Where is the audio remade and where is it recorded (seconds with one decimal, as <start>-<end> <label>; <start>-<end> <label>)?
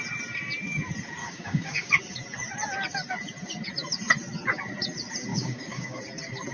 0.0-1.2 recorded; 1.2-1.9 remade; 1.9-5.3 recorded; 5.3-6.0 remade; 6.0-6.5 recorded